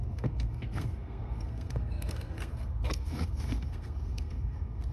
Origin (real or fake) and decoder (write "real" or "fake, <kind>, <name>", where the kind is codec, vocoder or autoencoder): fake, codec, SNAC